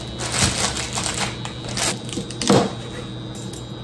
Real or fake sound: real